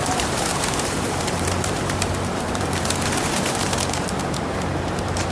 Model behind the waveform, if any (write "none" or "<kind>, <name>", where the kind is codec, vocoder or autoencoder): vocoder, BigVGAN v2